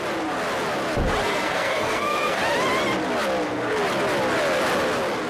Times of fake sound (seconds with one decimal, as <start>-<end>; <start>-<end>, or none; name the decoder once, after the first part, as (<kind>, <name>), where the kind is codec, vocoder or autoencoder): 1.2-2.4 (codec, SNAC)